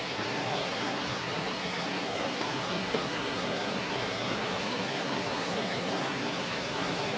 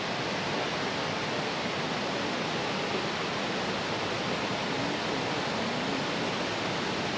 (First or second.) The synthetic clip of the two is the first